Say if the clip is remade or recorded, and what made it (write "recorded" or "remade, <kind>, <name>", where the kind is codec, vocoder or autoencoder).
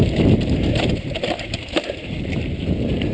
remade, vocoder, BigVGAN v2